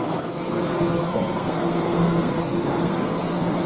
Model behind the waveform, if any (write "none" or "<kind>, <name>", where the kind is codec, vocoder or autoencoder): codec, SNAC